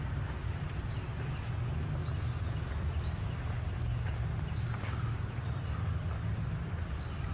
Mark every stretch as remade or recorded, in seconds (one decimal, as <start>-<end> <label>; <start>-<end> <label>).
0.0-7.3 recorded